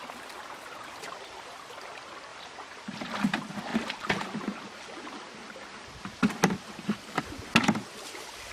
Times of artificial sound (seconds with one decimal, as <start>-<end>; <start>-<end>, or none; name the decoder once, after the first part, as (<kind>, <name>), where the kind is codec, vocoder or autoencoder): 2.3-3.2 (vocoder, BigVGAN v2)